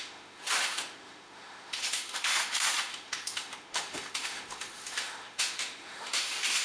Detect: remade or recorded remade